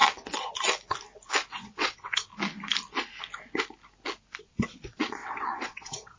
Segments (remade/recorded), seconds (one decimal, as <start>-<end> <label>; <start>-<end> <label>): 0.0-1.5 recorded; 1.5-2.3 remade; 2.3-4.4 recorded; 4.4-6.2 remade